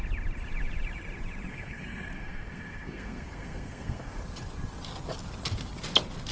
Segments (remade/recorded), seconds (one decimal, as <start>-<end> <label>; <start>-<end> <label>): 0.0-1.5 recorded; 1.5-4.2 remade; 4.2-6.3 recorded

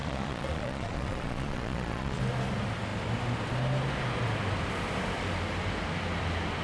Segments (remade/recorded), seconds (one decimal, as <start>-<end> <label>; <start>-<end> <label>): 0.0-2.2 remade; 2.2-6.6 recorded

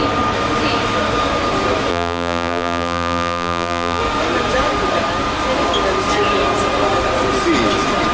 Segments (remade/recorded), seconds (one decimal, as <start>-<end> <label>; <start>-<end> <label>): 0.0-1.9 recorded; 1.9-4.0 remade; 4.0-8.1 recorded

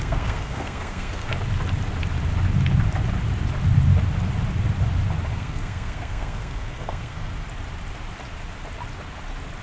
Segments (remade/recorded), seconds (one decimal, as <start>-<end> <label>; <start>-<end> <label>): 0.0-1.3 remade; 1.3-5.3 recorded; 5.3-7.3 remade; 7.3-9.6 recorded

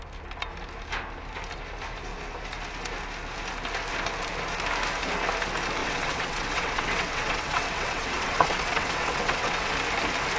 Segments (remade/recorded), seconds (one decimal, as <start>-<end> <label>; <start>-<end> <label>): 0.0-5.8 recorded; 5.8-9.7 remade; 9.7-10.4 recorded

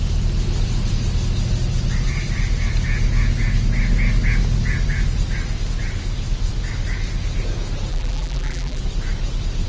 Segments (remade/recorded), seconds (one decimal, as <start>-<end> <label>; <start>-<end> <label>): 0.0-7.9 recorded; 7.9-8.8 remade; 8.8-9.7 recorded